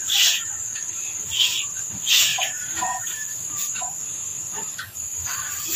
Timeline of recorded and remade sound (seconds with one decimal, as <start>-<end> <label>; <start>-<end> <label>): 0.0-5.8 remade